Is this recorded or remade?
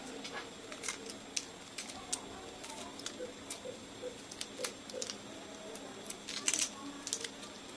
recorded